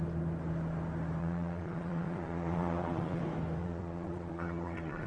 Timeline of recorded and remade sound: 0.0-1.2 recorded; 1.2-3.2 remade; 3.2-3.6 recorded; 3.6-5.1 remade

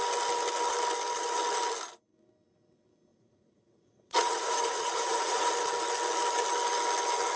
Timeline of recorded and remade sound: 0.0-3.1 recorded; 3.1-5.5 remade; 5.5-7.4 recorded

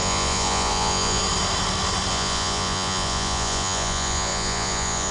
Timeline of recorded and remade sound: 0.0-1.2 remade; 1.2-2.1 recorded; 2.1-5.1 remade

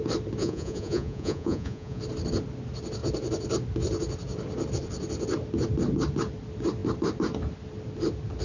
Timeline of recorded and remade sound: 0.0-0.4 recorded; 0.4-2.0 remade; 2.0-8.4 recorded

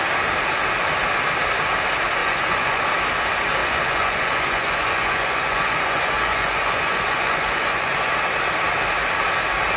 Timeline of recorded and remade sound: 0.0-2.2 recorded; 2.2-2.8 remade; 2.8-3.6 recorded; 3.6-8.1 remade; 8.1-9.8 recorded

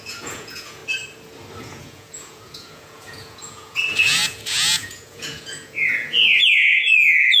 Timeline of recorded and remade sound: 0.0-0.8 remade; 0.8-1.6 recorded; 1.6-7.4 remade

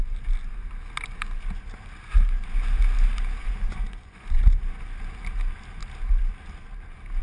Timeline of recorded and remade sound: 0.0-3.4 recorded; 3.4-4.4 remade; 4.4-7.2 recorded

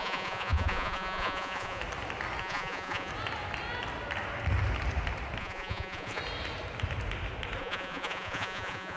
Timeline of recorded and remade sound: 0.0-1.8 remade; 1.8-2.4 recorded; 2.4-3.1 remade; 3.1-5.4 recorded; 5.4-6.2 remade; 6.2-7.6 recorded; 7.6-9.0 remade